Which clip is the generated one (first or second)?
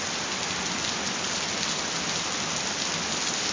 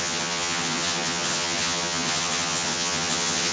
second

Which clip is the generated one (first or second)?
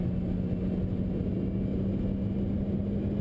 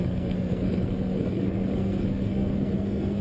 second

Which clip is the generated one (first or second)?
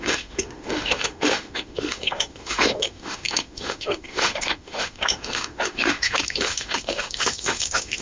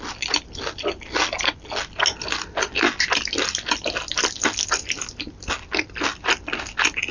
first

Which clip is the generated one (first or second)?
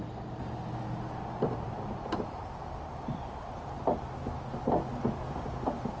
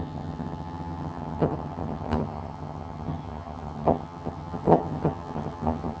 second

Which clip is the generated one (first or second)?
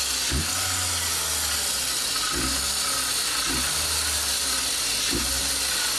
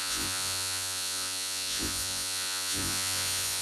second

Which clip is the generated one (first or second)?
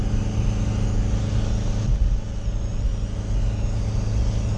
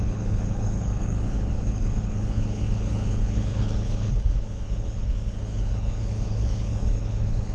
second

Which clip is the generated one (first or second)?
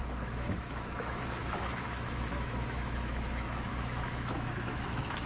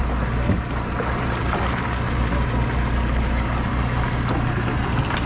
first